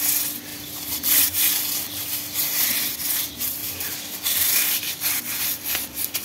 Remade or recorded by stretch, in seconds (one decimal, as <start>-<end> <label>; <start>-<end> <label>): 0.0-0.5 recorded; 0.5-2.9 remade; 2.9-6.2 recorded